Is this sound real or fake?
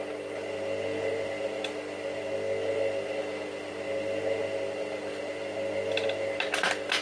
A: real